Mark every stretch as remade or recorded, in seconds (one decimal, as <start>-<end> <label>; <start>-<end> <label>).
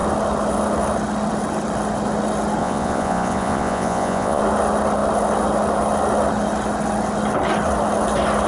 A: 0.0-2.6 recorded; 2.6-4.4 remade; 4.4-8.5 recorded